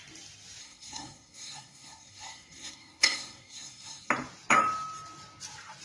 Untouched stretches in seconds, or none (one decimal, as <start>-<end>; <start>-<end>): 0.0-0.6; 4.1-5.8